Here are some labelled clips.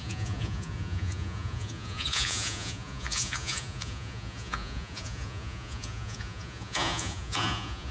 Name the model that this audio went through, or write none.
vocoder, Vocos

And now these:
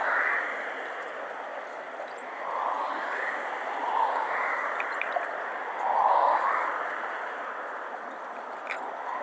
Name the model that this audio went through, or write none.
none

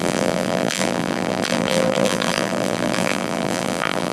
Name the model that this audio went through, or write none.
vocoder, BigVGAN v2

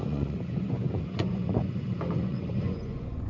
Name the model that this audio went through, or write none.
vocoder, Vocos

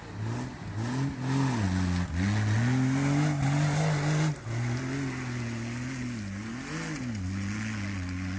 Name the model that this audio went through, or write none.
none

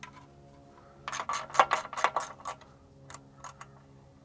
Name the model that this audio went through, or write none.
none